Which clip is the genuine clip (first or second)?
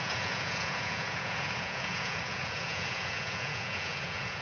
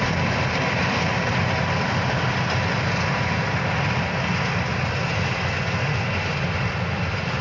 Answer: second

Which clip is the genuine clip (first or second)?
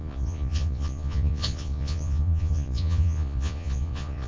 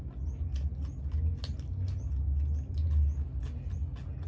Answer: second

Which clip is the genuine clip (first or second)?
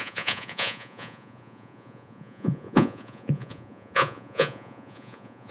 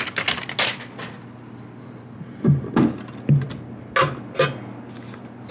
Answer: second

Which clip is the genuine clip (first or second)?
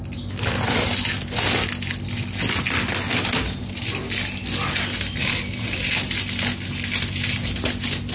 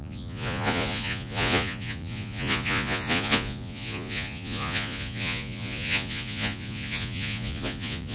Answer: first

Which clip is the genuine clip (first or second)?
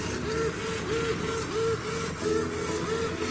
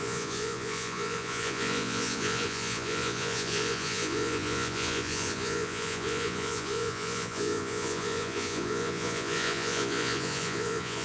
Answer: first